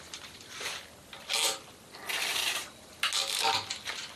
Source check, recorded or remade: recorded